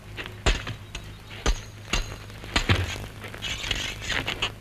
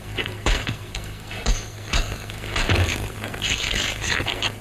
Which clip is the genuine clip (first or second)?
first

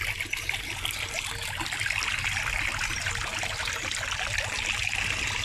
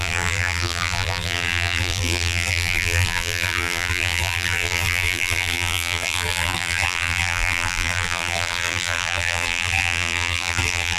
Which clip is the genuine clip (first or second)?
first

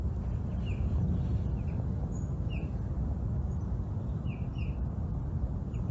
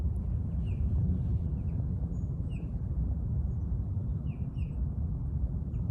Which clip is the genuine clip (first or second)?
first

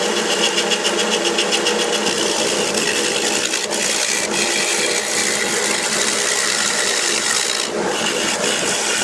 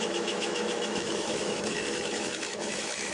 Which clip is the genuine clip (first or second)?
first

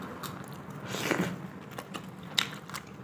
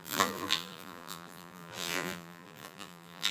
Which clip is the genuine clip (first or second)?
first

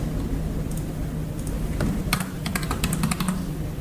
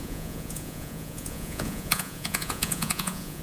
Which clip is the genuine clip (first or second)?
first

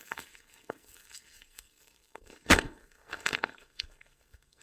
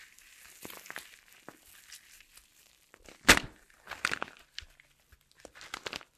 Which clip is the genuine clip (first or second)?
second